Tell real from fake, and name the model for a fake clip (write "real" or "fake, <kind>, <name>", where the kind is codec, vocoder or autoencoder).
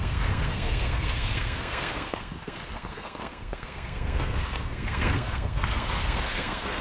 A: fake, codec, SNAC